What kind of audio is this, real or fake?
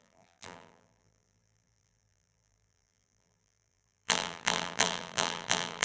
fake